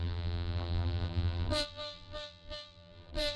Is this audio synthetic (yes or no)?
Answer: yes